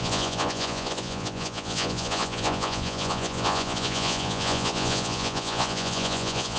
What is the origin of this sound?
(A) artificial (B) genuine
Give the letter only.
A